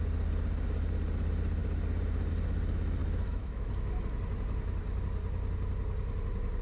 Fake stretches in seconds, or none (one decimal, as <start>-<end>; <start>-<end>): 3.0-3.7